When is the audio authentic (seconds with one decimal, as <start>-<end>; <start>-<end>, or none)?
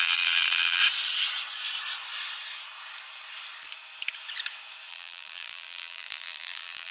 0.8-4.9